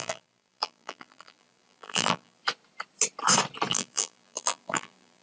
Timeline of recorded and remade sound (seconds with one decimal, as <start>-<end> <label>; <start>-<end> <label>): 0.0-2.4 remade; 2.4-3.7 recorded; 3.7-5.2 remade